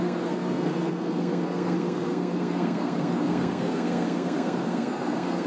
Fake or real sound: fake